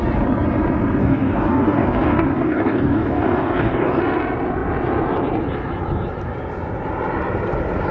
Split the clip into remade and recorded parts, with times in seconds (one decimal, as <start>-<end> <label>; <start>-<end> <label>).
0.0-1.0 recorded; 1.0-4.0 remade; 4.0-7.9 recorded